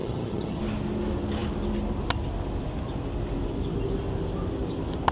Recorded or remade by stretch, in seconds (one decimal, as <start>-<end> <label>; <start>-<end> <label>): 0.0-0.6 remade; 0.6-5.1 recorded